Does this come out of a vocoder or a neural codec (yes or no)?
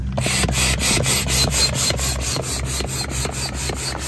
no